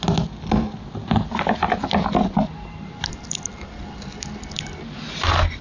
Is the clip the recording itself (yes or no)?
yes